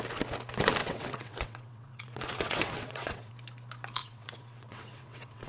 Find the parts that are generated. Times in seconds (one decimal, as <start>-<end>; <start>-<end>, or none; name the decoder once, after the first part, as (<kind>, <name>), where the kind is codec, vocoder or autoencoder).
0.8-3.3 (vocoder, WaveNeXt); 4.0-5.5